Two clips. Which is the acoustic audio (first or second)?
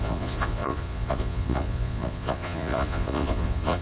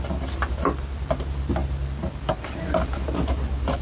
second